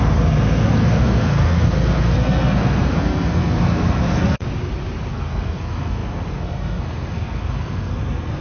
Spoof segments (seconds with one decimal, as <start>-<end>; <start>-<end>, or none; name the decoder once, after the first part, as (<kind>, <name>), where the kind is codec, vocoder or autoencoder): 0.0-4.4 (codec, SNAC); 5.1-8.4